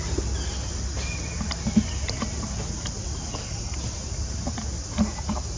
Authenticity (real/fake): real